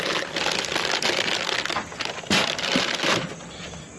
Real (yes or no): yes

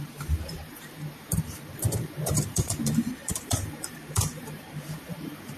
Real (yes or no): no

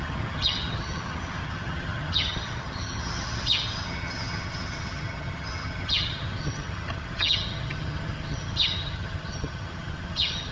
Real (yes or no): no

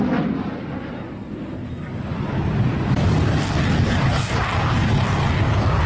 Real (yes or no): yes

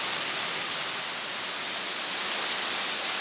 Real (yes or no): yes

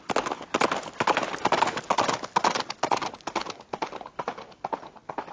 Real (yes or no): yes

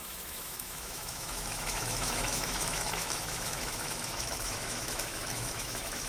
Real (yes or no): no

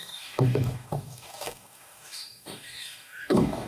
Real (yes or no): no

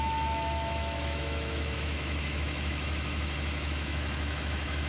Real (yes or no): no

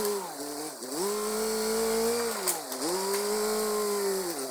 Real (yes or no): yes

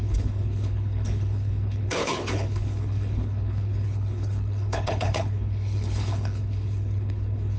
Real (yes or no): no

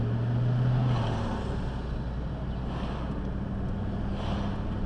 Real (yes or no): yes